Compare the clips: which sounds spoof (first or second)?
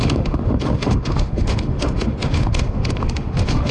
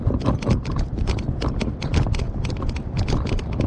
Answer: first